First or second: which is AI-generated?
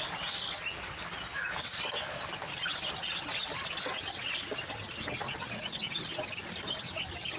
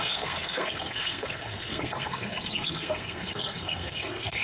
second